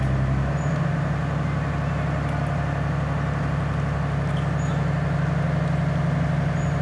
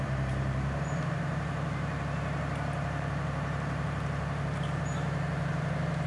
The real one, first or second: first